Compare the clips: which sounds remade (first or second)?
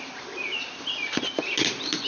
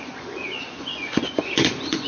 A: second